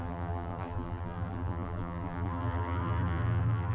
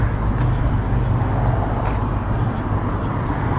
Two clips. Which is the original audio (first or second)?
second